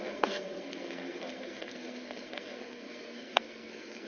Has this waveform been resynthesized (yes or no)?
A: yes